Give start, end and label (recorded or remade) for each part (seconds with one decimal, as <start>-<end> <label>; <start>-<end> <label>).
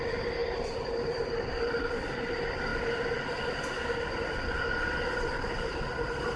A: 0.0-6.4 recorded